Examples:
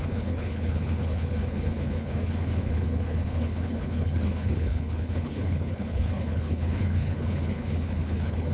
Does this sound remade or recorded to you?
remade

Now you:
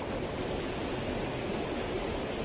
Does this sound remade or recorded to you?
recorded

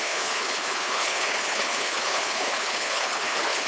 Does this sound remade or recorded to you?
remade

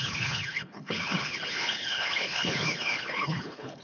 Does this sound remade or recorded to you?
remade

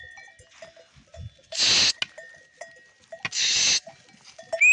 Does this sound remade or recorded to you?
recorded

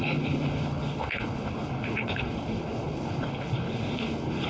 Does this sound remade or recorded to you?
remade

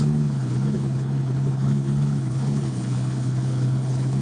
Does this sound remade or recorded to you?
remade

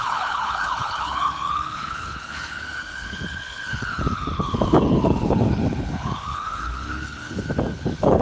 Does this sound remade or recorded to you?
remade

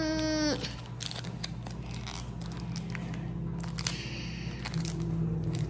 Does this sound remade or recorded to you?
recorded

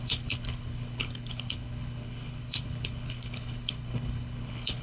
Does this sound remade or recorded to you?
remade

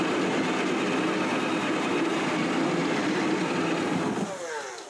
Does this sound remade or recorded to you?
recorded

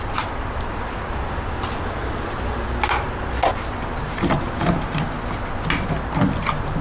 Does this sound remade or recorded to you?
recorded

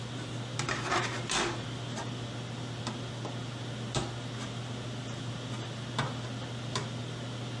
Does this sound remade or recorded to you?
recorded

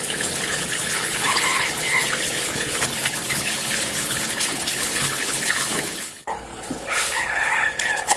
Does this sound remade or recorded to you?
remade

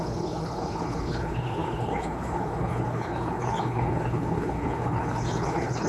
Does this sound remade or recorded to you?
remade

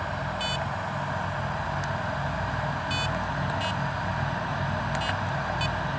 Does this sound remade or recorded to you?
recorded